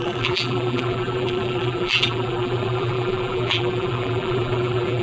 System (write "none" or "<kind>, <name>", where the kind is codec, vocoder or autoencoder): vocoder, BigVGAN v2